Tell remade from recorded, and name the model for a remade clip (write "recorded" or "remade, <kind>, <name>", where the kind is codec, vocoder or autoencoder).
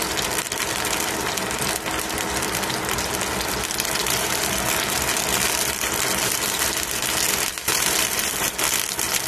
remade, vocoder, BigVGAN v2